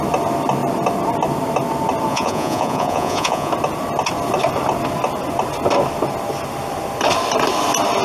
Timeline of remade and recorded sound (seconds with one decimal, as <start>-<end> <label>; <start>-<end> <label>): 0.0-2.1 recorded; 2.1-3.5 remade; 3.5-8.0 recorded